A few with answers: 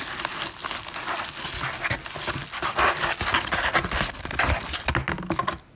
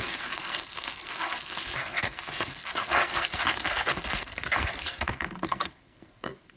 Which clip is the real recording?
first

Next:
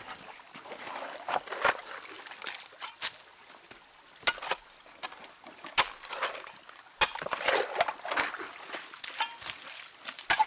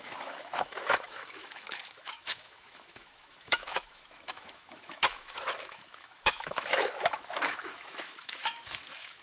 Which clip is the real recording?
first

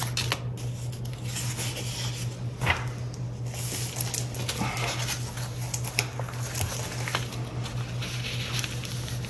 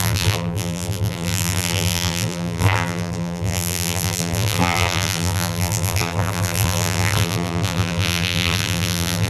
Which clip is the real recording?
first